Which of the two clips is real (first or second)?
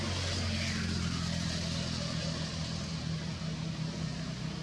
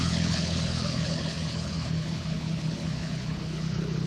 first